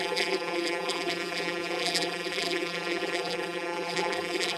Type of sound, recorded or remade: remade